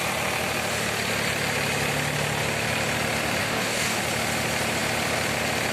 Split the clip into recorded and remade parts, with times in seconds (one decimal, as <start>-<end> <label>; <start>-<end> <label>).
0.0-3.4 recorded; 3.4-4.0 remade; 4.0-5.7 recorded